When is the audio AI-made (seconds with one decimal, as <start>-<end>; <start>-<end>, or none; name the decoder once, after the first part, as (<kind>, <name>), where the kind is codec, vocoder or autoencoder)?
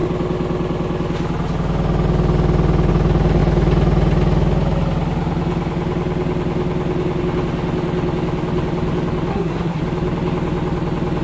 9.3-9.8 (codec, SNAC)